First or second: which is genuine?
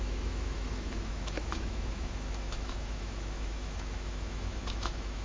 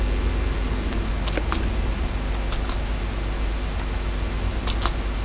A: second